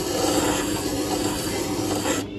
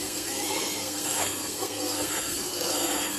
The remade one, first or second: second